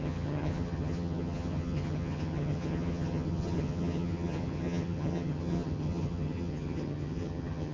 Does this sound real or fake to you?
fake